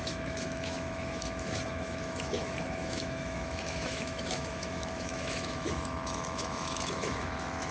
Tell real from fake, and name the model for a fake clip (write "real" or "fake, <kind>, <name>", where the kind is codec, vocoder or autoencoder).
fake, autoencoder, DAC-VAE